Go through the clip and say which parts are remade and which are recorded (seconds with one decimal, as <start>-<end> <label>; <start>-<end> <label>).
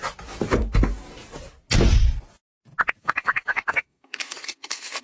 0.0-3.0 recorded; 3.0-5.0 remade